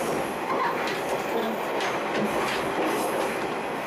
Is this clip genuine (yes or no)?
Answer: yes